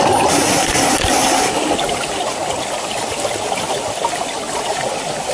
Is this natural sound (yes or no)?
yes